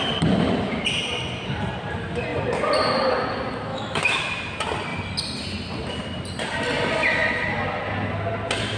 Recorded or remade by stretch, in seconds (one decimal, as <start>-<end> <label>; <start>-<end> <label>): 0.0-3.7 recorded; 3.7-4.2 remade; 4.2-8.8 recorded